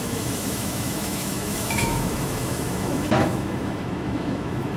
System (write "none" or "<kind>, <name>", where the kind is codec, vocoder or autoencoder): autoencoder, DAC-VAE